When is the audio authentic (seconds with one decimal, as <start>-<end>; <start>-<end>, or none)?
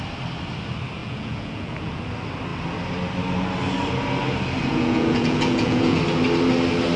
0.0-1.0; 2.0-4.6; 6.0-7.0